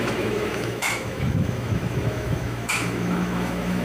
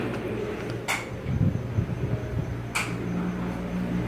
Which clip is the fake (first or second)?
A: first